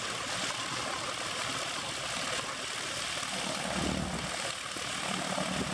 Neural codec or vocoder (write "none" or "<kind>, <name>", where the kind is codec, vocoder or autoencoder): none